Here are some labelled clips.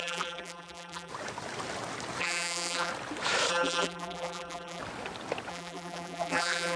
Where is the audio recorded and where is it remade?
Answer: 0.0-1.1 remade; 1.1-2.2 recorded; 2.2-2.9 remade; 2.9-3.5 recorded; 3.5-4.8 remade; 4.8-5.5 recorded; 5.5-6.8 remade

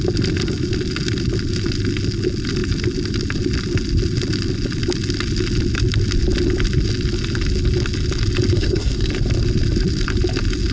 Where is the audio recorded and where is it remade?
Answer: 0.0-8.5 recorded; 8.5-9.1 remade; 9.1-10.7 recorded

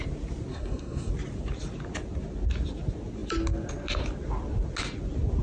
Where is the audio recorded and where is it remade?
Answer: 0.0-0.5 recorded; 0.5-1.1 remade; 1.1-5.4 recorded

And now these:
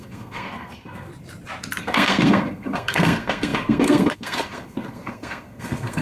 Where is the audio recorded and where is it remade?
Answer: 0.0-1.1 remade; 1.1-1.8 recorded; 1.8-6.0 remade